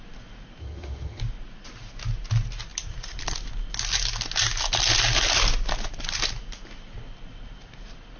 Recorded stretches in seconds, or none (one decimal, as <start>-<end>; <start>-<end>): 0.0-0.6; 1.2-8.2